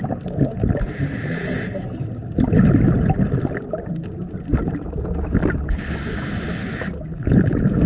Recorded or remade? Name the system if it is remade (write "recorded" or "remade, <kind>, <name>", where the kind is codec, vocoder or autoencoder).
recorded